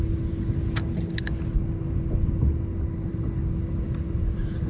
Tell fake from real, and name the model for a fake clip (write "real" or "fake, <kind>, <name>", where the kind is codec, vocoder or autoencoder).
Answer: real